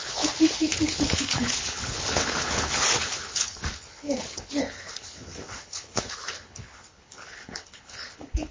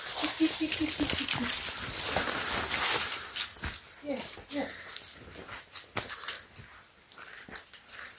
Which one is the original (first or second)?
second